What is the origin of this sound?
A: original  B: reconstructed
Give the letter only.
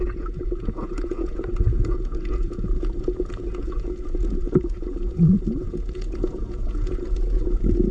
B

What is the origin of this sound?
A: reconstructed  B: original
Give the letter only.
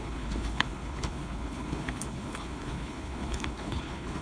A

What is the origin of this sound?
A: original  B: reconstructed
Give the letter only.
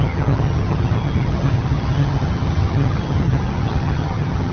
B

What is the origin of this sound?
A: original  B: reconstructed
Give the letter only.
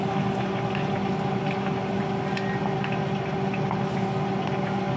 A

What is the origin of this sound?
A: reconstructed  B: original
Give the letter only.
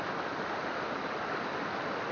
B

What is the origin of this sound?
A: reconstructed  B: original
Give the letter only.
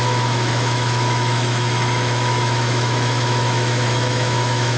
A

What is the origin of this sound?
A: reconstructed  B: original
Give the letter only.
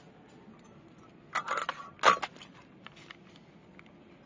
B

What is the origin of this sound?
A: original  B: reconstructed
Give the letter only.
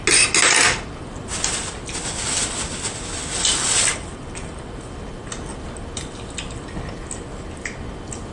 A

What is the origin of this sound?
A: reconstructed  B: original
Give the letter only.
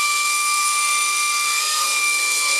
A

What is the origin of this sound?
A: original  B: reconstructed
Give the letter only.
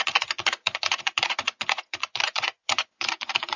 B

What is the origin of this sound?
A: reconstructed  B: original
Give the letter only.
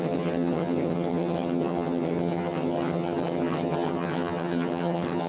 A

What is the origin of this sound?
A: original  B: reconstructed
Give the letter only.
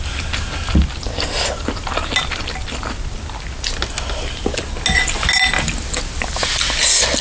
A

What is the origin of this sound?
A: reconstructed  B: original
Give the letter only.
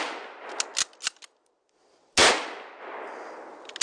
B